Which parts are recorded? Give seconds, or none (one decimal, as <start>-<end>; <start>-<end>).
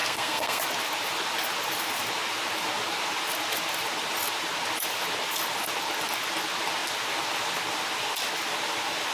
0.6-9.1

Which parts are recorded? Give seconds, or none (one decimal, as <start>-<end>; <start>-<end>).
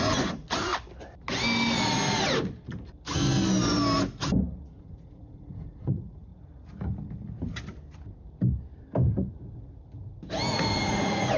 0.7-4.8; 6.3-10.5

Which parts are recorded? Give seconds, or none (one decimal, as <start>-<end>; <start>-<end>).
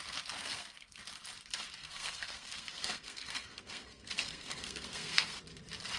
0.0-0.4; 1.0-1.8; 5.4-6.0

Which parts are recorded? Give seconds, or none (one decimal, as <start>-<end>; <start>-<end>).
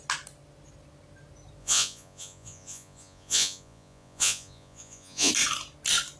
0.0-1.6; 5.3-6.2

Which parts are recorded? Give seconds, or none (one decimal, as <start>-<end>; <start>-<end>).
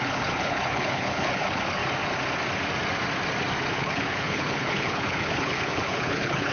1.8-3.7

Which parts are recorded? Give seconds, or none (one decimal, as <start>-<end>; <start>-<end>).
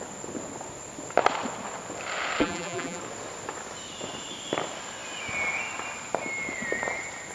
0.0-2.4; 3.0-7.3